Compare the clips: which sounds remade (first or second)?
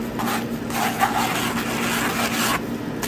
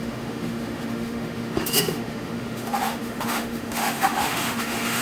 second